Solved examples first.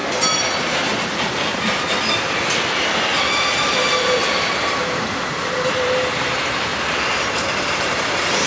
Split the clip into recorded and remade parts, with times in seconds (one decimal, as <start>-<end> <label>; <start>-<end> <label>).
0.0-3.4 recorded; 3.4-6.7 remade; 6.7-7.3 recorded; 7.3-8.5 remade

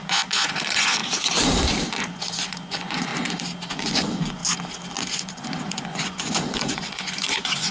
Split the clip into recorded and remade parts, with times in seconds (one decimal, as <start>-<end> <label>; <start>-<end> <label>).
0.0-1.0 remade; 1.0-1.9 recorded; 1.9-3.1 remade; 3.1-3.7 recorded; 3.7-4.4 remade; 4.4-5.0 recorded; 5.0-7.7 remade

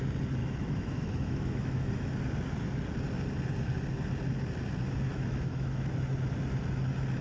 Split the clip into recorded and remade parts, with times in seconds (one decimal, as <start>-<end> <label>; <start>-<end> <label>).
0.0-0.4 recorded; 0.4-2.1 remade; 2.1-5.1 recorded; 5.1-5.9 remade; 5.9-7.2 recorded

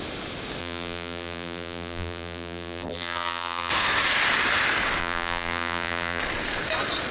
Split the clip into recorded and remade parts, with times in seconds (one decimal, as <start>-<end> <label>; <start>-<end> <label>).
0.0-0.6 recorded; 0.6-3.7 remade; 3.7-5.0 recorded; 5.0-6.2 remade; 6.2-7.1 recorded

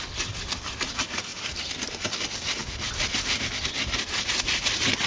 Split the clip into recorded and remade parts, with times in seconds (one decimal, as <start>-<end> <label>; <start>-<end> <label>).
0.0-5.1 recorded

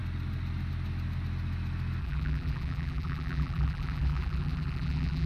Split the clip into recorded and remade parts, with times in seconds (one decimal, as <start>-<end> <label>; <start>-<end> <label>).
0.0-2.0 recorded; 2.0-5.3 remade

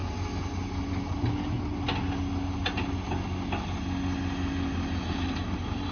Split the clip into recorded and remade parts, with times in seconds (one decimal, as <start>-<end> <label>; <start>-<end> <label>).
0.0-5.9 recorded